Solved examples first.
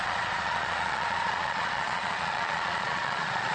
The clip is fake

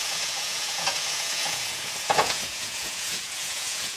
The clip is fake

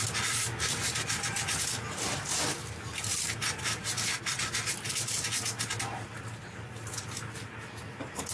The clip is real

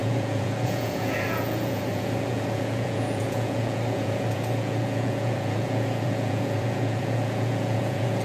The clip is fake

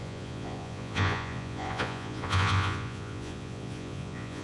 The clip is fake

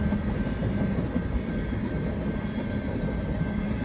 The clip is real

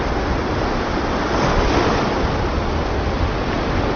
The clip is real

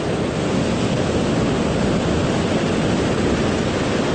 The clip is real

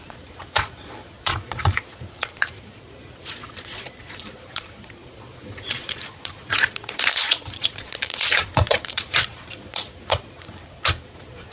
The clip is fake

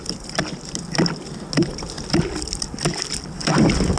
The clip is real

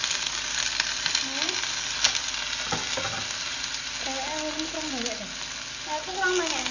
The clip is real